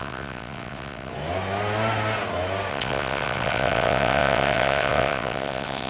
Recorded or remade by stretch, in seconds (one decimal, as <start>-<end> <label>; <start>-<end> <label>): 0.0-1.1 remade; 1.1-2.7 recorded; 2.7-5.9 remade